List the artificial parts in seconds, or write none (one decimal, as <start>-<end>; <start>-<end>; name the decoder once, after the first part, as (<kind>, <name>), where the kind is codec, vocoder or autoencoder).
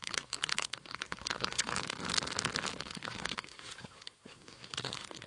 0.0-1.7 (codec, SNAC); 2.8-5.3